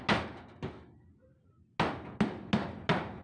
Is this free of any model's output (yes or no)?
yes